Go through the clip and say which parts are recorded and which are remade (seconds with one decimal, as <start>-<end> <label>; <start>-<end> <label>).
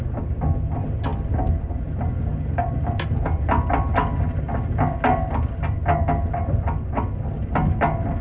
0.0-8.2 recorded